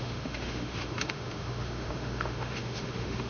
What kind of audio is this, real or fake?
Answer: fake